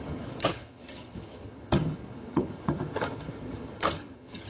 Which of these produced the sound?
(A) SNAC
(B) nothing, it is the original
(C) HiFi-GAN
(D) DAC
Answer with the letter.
C